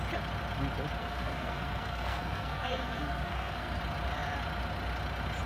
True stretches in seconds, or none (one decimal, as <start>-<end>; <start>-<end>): 0.0-1.0; 3.8-5.5